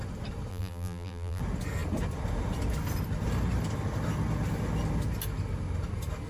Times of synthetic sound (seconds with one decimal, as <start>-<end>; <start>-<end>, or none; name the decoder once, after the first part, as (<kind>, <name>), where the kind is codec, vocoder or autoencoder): 0.5-1.4 (vocoder, BigVGAN v2)